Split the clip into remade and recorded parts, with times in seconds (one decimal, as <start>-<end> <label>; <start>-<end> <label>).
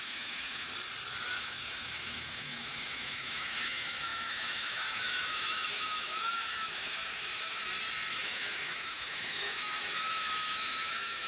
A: 0.0-0.7 remade; 0.7-1.4 recorded; 1.4-7.6 remade; 7.6-8.1 recorded; 8.1-11.3 remade